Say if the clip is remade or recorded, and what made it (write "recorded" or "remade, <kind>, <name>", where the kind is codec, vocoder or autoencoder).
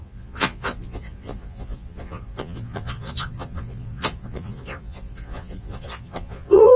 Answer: remade, vocoder, Vocos